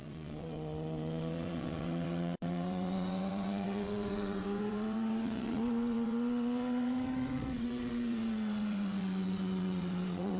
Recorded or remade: remade